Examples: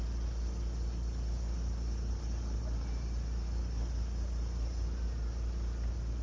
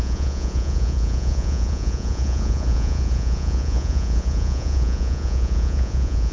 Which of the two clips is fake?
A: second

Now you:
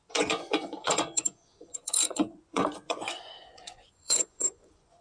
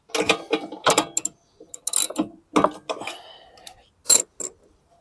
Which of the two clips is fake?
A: first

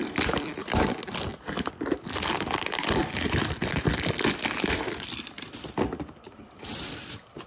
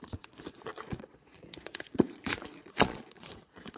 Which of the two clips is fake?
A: second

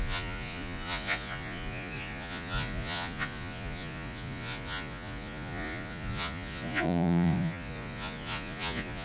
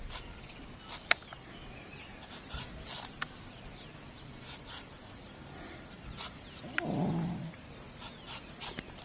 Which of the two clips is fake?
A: first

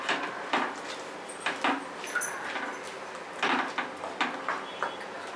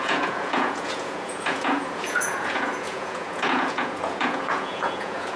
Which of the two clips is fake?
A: second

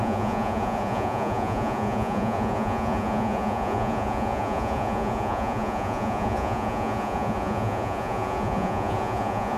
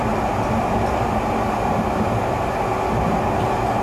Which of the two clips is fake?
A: first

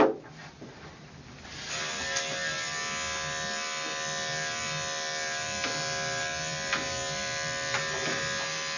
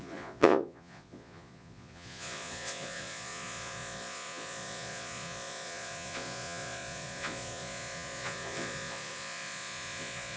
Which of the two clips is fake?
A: second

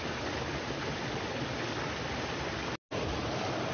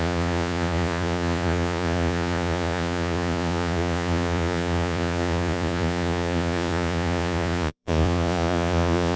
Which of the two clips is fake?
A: second